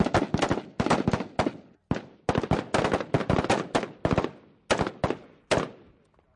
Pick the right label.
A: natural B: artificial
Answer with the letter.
A